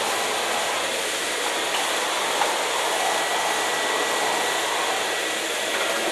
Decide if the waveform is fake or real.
real